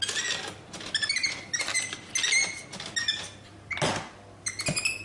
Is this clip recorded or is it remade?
recorded